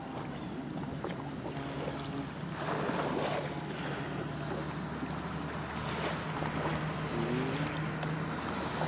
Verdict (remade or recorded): recorded